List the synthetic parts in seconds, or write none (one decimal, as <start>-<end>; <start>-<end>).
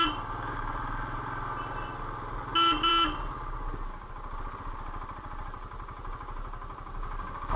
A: none